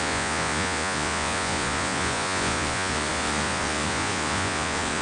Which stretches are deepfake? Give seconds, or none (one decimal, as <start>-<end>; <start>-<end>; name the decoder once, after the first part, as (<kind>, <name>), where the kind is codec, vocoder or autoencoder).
0.0-5.0 (vocoder, Vocos)